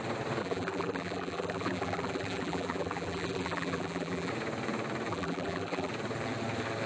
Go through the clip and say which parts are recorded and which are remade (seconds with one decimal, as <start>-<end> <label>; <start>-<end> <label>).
0.0-0.4 recorded; 0.4-4.3 remade; 4.3-5.1 recorded; 5.1-5.9 remade; 5.9-6.9 recorded